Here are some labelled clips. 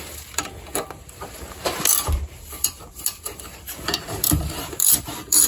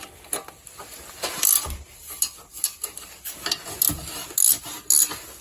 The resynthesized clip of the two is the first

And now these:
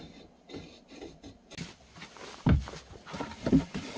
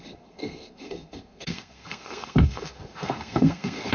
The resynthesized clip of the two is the second